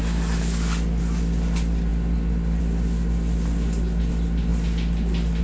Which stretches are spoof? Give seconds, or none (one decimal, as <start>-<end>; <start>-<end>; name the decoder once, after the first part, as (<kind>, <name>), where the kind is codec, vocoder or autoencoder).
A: none